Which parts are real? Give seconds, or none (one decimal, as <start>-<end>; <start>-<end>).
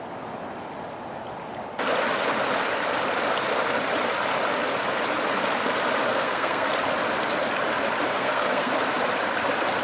0.0-6.1; 6.7-8.1; 8.7-9.8